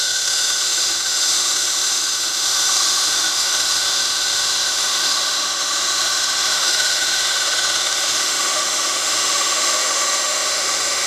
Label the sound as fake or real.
fake